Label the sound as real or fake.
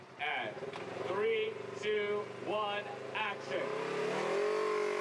real